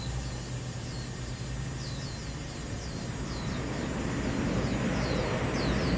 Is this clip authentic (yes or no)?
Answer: yes